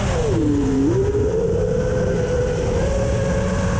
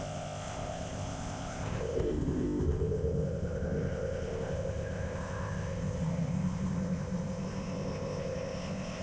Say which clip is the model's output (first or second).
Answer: second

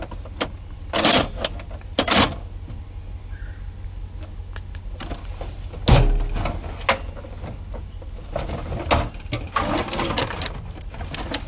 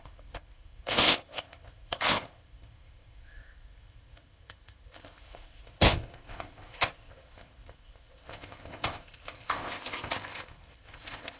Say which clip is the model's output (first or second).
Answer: second